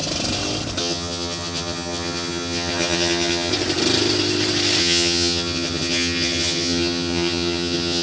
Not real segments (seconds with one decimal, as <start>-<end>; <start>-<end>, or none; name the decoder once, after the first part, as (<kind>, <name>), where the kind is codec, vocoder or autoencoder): 0.8-3.5 (vocoder, HiFi-GAN); 4.8-8.0